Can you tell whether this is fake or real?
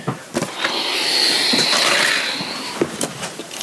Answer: real